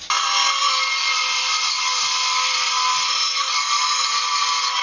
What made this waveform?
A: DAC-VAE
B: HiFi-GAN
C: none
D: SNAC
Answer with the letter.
C